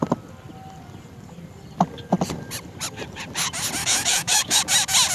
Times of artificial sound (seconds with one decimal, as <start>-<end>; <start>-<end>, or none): 3.8-4.6